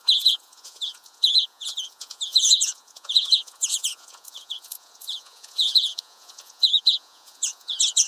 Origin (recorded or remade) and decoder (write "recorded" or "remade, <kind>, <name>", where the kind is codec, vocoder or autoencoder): remade, vocoder, Vocos